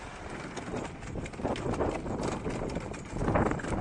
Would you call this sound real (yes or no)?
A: yes